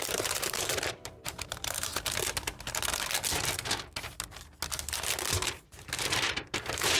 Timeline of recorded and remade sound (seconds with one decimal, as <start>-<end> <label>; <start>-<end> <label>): 0.0-1.9 remade; 1.9-5.5 recorded; 5.5-7.0 remade